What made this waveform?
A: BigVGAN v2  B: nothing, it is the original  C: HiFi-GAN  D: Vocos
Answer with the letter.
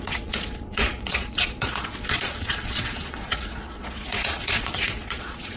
D